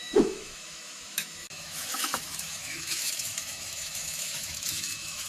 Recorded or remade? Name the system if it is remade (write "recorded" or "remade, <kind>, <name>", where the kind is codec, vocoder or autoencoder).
remade, autoencoder, DAC-VAE